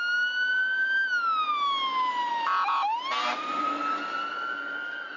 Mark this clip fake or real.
real